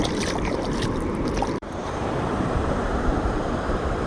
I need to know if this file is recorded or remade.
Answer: remade